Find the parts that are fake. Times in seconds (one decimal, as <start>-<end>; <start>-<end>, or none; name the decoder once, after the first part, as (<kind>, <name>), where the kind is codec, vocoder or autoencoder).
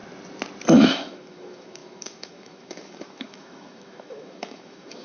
0.7-5.0 (autoencoder, DAC-VAE)